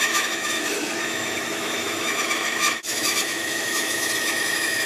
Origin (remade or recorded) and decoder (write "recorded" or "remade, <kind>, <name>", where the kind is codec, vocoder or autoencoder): remade, autoencoder, DAC-VAE